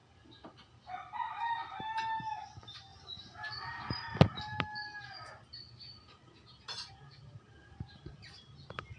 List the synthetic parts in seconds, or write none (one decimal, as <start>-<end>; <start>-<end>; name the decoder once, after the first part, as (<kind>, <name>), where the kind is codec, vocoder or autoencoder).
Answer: none